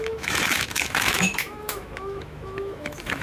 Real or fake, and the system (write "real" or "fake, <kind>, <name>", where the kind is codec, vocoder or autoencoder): fake, autoencoder, DAC-VAE